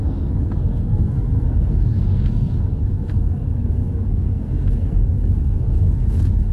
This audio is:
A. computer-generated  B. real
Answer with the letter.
A